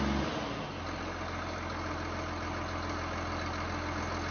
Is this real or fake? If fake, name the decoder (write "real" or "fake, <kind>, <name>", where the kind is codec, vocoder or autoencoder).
real